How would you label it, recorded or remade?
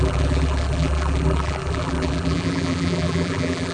remade